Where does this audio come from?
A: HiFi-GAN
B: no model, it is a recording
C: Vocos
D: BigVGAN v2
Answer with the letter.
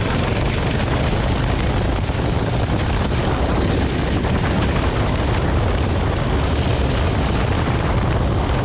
B